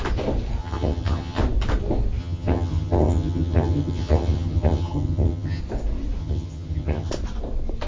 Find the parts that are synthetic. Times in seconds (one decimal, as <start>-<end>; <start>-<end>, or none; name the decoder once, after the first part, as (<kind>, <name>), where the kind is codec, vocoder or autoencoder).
0.6-1.4 (vocoder, HiFi-GAN); 2.2-5.6; 6.2-7.1